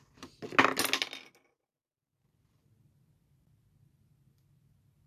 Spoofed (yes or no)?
no